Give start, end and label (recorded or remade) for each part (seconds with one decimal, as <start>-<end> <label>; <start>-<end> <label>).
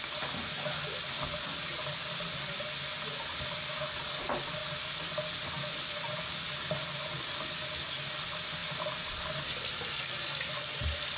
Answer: 0.0-11.2 recorded